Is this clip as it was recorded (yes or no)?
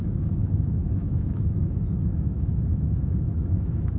no